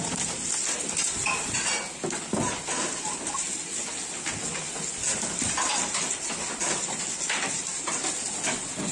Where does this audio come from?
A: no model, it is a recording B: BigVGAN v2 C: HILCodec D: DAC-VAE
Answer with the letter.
A